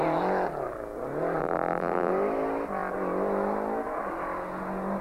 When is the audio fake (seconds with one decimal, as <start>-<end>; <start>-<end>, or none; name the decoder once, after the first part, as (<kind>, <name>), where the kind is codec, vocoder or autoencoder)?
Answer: 1.4-2.1 (vocoder, BigVGAN v2)